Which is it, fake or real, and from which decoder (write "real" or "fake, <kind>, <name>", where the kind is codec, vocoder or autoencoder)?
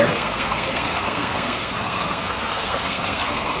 fake, codec, SNAC